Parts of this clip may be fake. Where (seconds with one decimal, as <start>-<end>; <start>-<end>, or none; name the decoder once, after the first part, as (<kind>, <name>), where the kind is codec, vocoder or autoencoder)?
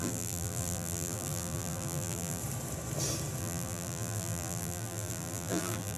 0.0-2.4 (vocoder, BigVGAN v2); 3.4-6.0